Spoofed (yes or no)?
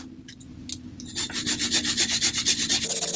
no